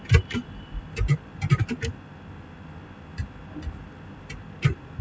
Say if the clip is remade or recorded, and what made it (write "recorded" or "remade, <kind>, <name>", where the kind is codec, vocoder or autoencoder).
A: recorded